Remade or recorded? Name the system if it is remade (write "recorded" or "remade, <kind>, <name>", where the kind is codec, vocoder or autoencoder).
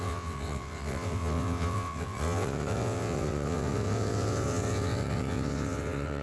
remade, vocoder, WaveNeXt